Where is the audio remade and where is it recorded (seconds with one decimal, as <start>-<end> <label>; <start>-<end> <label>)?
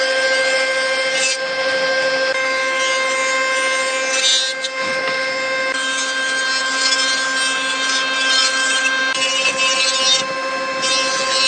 0.0-11.5 recorded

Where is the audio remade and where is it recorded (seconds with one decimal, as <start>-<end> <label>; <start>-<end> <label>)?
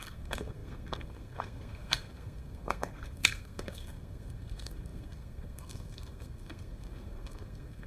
0.0-7.9 remade